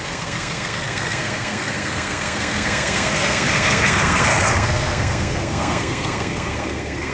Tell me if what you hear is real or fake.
fake